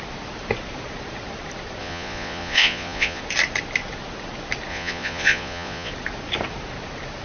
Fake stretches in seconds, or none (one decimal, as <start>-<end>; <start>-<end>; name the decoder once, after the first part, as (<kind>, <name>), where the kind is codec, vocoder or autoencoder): 1.8-3.2 (vocoder, Vocos); 4.7-5.9